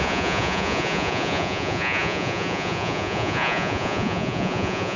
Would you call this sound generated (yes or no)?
yes